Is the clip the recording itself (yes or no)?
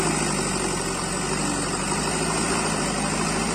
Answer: yes